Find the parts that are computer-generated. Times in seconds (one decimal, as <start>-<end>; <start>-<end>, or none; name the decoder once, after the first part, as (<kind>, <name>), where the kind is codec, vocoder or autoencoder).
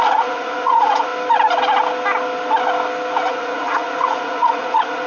0.0-1.1 (vocoder, Vocos); 3.3-5.1